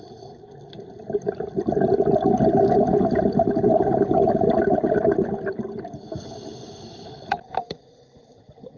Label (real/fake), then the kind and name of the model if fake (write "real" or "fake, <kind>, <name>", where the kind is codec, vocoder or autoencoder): real